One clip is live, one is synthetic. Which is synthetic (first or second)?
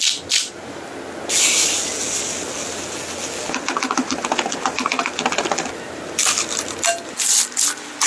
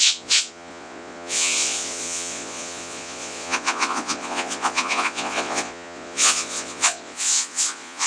second